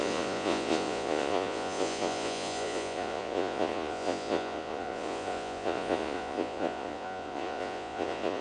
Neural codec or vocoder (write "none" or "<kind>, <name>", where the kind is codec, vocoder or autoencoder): vocoder, Vocos